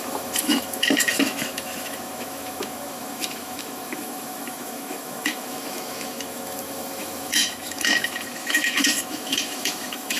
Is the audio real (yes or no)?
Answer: no